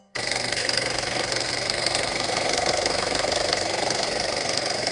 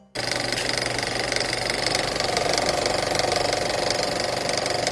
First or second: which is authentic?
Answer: second